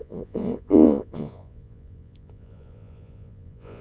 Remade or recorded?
remade